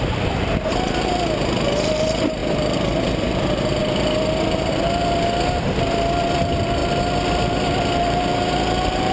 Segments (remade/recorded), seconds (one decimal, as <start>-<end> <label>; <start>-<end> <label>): 0.0-9.1 recorded